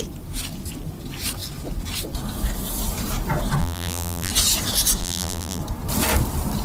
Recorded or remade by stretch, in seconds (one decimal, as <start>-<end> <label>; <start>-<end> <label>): 0.0-3.6 recorded; 3.6-4.3 remade; 4.3-5.0 recorded; 5.0-5.6 remade; 5.6-6.6 recorded